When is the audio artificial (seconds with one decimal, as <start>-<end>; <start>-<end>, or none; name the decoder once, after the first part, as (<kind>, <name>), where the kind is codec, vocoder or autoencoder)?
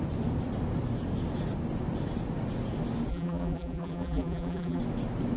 3.1-4.8 (vocoder, BigVGAN v2)